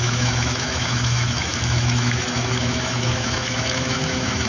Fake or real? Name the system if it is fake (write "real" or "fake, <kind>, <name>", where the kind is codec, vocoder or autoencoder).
fake, autoencoder, DAC-VAE